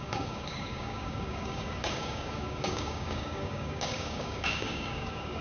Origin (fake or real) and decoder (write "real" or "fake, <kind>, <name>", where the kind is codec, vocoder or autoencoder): fake, codec, DAC